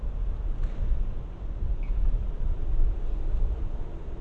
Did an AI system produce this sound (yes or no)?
no